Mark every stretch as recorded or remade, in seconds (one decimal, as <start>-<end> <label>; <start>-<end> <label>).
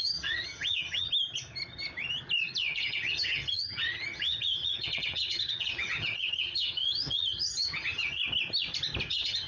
0.0-1.1 remade; 1.1-2.6 recorded; 2.6-8.2 remade; 8.2-9.1 recorded; 9.1-9.5 remade